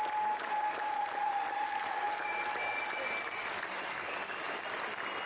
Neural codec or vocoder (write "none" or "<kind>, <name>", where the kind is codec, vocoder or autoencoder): none